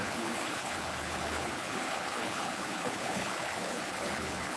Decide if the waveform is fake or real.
fake